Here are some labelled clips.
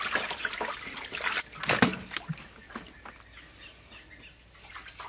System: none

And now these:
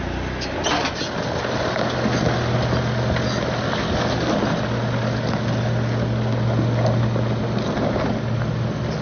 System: none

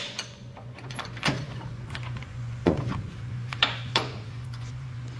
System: vocoder, Vocos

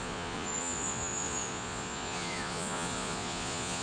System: vocoder, Vocos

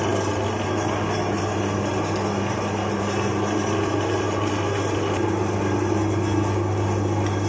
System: none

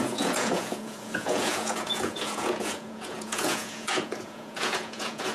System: vocoder, Vocos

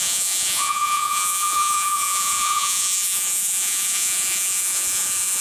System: vocoder, Vocos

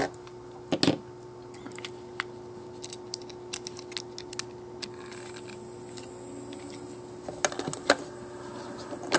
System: none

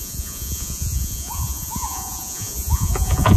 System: vocoder, Vocos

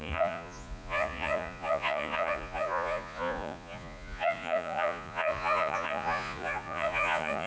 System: vocoder, Vocos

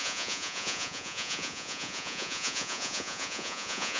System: vocoder, Vocos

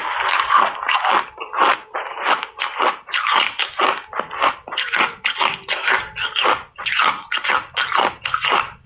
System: none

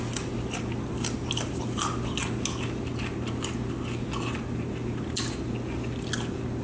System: none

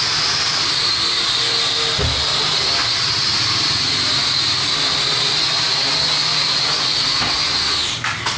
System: none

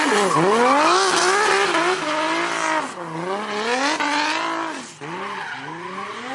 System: none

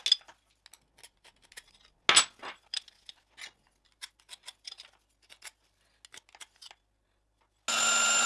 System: none